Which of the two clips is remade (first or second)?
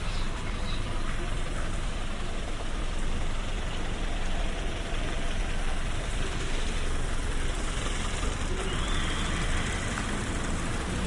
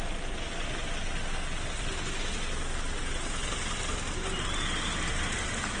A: first